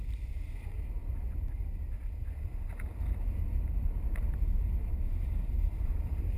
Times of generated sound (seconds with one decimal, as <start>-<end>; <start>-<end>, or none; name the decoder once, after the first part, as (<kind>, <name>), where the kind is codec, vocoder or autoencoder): 0.0-1.0 (vocoder, BigVGAN v2); 4.8-6.4

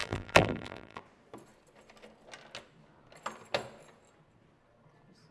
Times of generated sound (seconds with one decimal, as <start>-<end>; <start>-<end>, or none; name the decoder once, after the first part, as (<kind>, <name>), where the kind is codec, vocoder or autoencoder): 0.0-1.0 (vocoder, BigVGAN v2)

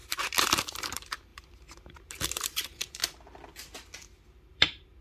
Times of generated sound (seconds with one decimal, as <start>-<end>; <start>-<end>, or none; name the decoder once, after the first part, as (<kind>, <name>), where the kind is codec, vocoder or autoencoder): 0.0-3.0 (vocoder, BigVGAN v2); 4.5-5.0

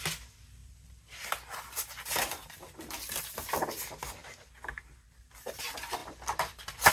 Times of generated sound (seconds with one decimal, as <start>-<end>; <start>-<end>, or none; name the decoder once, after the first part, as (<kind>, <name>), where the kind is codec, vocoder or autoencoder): 0.6-3.2 (vocoder, BigVGAN v2); 6.0-6.9

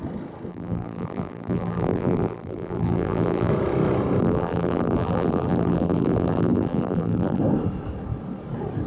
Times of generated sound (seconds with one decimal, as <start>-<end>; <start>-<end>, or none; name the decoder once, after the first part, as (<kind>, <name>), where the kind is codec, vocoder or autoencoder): 0.5-3.5 (vocoder, BigVGAN v2); 4.2-7.4

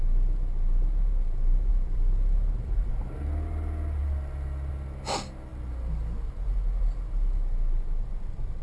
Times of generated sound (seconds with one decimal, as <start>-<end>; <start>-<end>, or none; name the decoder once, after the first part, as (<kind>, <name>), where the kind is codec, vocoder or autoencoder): 1.7-2.9 (vocoder, BigVGAN v2); 4.0-4.7; 5.5-6.3